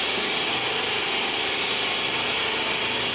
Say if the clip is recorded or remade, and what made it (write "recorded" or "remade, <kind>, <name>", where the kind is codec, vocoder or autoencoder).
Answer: recorded